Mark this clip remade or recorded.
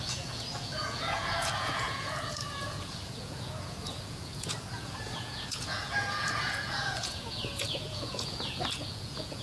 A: remade